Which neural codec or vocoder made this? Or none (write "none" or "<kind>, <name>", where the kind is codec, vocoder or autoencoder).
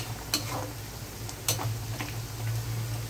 none